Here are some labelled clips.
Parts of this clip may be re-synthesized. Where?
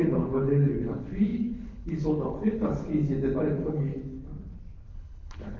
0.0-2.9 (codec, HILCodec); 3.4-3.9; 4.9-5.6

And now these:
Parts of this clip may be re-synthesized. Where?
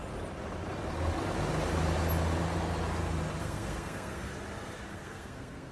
3.4-4.3 (codec, SNAC); 4.9-5.7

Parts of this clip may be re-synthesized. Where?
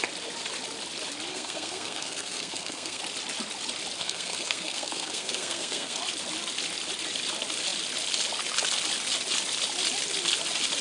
1.3-3.0 (codec, SNAC); 4.0-6.0